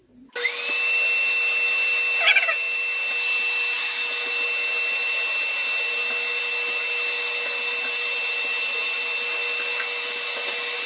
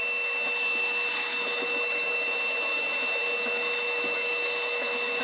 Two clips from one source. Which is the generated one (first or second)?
second